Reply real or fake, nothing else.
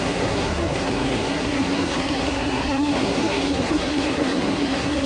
fake